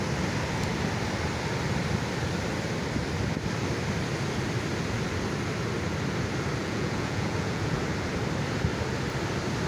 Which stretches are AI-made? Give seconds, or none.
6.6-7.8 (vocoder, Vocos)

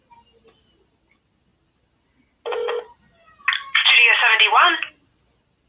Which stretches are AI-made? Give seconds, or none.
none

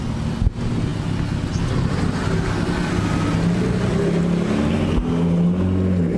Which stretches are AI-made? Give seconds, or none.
none

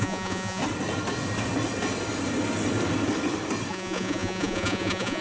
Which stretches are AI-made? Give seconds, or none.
0.0-0.6 (vocoder, Vocos); 3.7-5.2